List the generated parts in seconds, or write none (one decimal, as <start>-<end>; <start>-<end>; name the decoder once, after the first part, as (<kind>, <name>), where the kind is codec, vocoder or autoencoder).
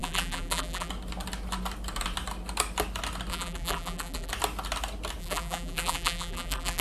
0.0-0.9 (vocoder, BigVGAN v2); 3.3-4.3; 5.2-6.8